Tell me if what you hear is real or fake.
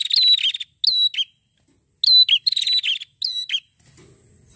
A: real